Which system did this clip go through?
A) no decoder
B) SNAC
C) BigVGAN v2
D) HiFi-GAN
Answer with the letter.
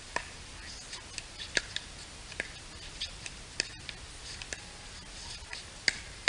A